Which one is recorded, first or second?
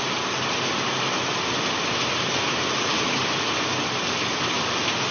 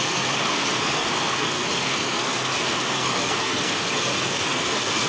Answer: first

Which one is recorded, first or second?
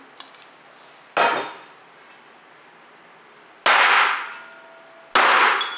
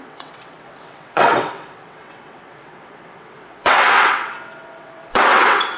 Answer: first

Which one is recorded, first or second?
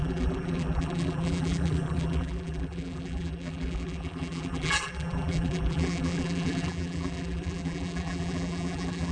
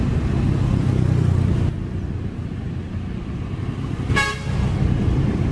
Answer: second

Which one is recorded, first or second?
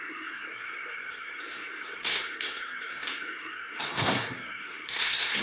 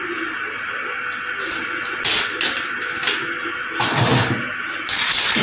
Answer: second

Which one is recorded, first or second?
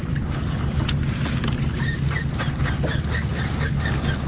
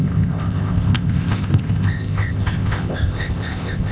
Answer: first